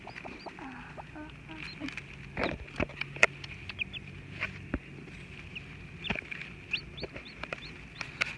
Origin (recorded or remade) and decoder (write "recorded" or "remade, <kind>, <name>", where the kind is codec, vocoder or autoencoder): recorded